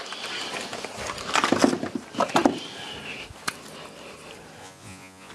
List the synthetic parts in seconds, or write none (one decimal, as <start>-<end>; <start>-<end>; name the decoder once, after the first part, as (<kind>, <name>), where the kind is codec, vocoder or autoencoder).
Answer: 4.6-5.3 (vocoder, Vocos)

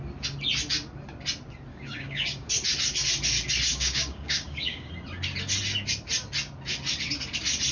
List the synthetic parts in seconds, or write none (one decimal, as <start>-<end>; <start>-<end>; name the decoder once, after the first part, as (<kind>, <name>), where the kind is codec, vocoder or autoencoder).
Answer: 1.7-2.5 (codec, DAC); 3.7-4.9

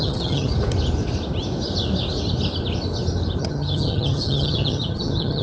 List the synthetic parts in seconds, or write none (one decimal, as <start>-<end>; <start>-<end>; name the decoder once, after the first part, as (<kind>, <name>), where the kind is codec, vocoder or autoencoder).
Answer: 0.0-0.5 (vocoder, HiFi-GAN); 3.4-5.4

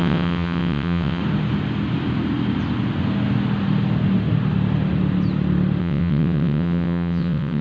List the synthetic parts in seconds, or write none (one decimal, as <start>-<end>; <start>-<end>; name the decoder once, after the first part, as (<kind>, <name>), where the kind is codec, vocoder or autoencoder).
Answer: 0.0-1.2 (vocoder, WaveNeXt); 5.8-7.6

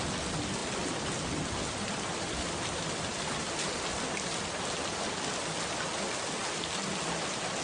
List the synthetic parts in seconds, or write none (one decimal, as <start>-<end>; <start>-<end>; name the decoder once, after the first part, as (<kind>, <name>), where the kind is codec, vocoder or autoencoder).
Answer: none

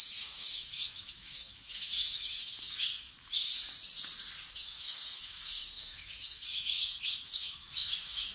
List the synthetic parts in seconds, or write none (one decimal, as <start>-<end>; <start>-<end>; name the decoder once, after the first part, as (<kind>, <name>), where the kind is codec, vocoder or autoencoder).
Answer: 0.0-3.5 (autoencoder, DAC-VAE); 4.5-8.3

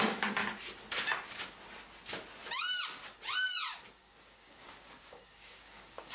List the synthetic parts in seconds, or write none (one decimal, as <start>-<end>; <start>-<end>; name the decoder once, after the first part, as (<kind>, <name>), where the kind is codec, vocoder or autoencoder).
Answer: 0.0-0.4 (codec, DAC); 4.0-6.1